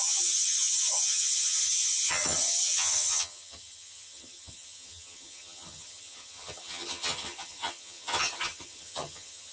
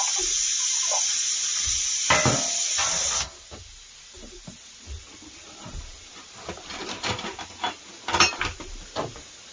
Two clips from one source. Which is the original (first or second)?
second